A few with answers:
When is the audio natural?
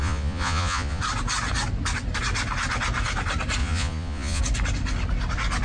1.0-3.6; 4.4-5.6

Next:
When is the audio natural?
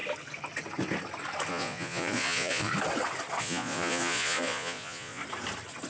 0.0-1.5; 2.7-3.4; 5.2-5.9